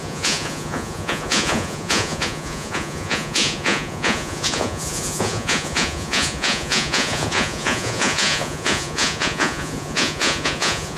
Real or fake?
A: fake